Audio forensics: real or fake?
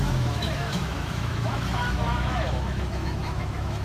fake